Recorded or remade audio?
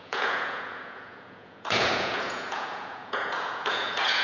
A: remade